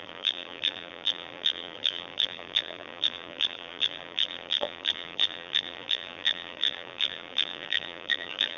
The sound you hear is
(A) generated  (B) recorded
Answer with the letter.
A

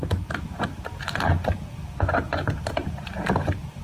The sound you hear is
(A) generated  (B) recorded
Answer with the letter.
A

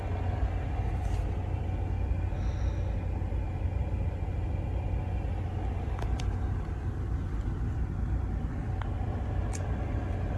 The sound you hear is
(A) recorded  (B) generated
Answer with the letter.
A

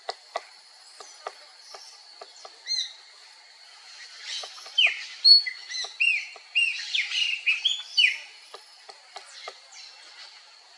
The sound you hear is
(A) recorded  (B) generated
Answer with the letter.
A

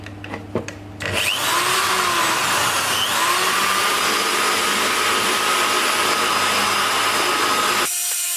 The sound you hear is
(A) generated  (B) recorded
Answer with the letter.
B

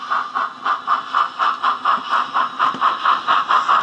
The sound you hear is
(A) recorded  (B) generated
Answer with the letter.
A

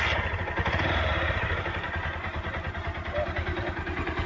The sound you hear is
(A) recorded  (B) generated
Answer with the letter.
B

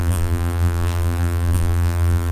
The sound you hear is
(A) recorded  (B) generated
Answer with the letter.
B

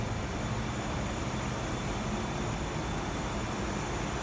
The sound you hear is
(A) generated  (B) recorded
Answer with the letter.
B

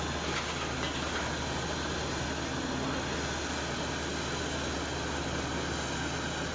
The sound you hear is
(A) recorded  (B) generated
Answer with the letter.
A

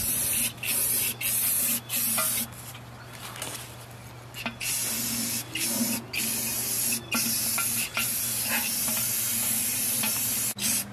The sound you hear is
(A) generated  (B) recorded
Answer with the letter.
B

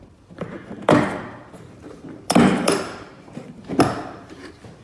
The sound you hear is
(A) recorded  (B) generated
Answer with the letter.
B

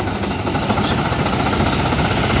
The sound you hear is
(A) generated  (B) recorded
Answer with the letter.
A